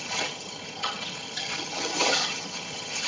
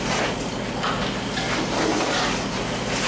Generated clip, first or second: first